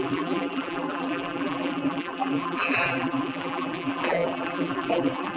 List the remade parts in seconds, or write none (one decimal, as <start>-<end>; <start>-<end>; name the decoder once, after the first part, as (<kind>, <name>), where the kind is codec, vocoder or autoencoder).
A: 0.0-5.4 (vocoder, BigVGAN v2)